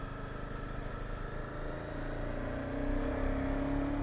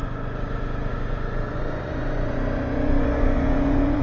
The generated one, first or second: second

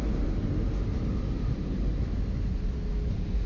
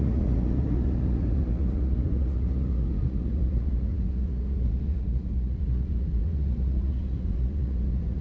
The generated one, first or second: second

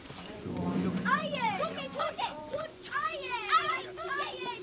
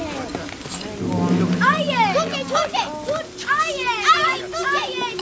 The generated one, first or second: first